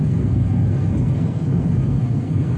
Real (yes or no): no